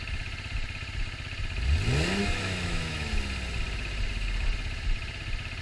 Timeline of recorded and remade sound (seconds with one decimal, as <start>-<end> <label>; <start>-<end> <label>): 0.0-2.2 recorded; 2.2-3.1 remade; 3.1-5.6 recorded